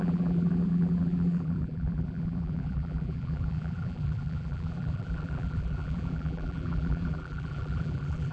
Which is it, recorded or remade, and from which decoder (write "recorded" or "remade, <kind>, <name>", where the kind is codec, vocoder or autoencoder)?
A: remade, vocoder, BigVGAN v2